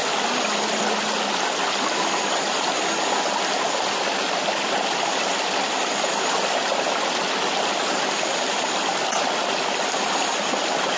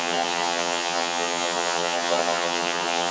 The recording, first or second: first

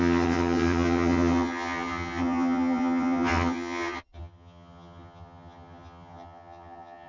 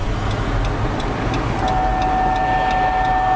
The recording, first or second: second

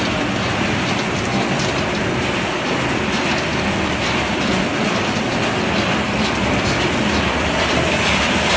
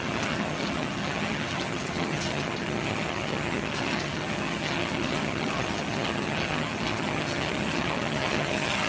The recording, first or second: first